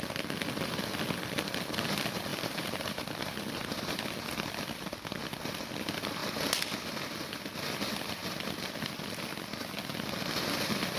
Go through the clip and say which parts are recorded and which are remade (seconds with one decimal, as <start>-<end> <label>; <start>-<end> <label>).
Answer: 0.0-2.3 recorded; 2.3-4.0 remade; 4.0-11.0 recorded